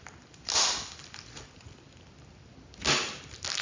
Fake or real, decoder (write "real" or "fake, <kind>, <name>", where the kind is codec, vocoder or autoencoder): real